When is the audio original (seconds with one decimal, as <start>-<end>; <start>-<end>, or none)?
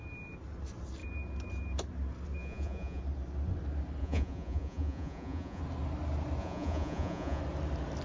0.0-2.4; 3.0-4.0; 5.6-6.4; 7.4-8.0